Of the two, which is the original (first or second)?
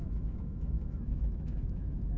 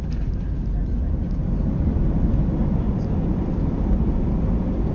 second